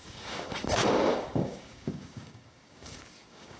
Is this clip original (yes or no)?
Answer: no